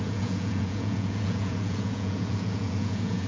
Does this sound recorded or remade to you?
remade